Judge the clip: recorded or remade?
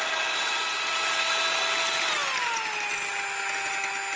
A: recorded